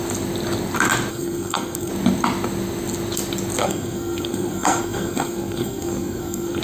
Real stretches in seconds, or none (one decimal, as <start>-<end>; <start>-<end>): 0.0-1.1; 1.9-3.6